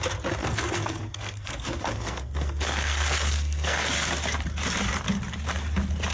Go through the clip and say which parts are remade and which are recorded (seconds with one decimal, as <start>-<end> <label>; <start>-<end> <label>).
0.0-0.4 recorded; 0.4-4.1 remade; 4.1-6.1 recorded